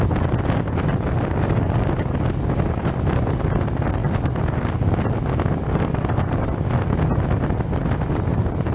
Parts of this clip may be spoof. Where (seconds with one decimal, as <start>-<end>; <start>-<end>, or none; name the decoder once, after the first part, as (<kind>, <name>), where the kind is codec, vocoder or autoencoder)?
none